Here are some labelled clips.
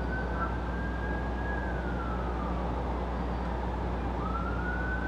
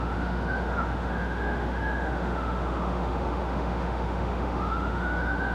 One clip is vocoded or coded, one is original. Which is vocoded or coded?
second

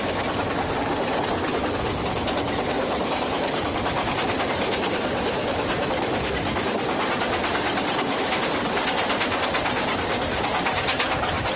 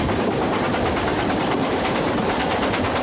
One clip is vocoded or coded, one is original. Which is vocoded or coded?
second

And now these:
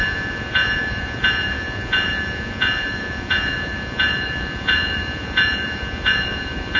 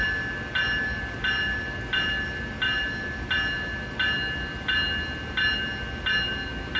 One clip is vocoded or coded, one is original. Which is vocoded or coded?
first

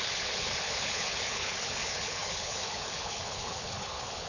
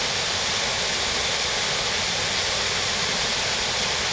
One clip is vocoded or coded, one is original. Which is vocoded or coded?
first